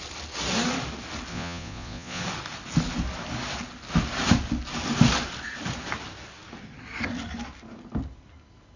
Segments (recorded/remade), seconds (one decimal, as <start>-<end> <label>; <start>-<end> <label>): 0.0-1.3 recorded; 1.3-2.2 remade; 2.2-8.8 recorded

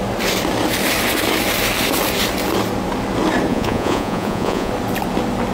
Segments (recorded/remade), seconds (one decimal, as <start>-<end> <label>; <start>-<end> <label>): 0.0-3.5 recorded; 3.5-4.7 remade; 4.7-5.5 recorded